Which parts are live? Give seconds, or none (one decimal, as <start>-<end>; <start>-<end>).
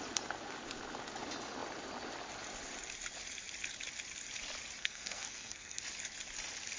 0.0-4.8; 5.8-6.8